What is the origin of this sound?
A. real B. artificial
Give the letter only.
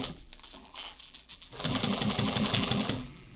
B